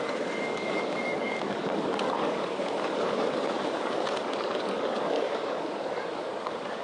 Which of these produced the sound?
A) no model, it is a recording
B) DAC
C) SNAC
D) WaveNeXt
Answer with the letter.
B